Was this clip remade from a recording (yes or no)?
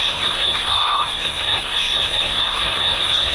yes